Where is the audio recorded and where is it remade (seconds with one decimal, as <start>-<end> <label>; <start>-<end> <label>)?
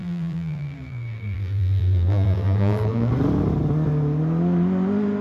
0.0-3.1 remade; 3.1-5.2 recorded